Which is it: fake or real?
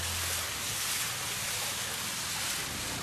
real